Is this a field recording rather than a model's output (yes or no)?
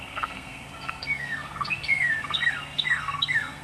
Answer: no